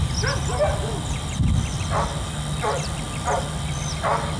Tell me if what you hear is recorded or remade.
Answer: recorded